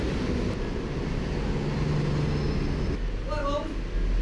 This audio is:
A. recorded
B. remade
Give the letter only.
A